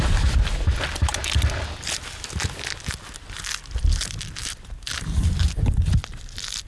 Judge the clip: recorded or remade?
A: recorded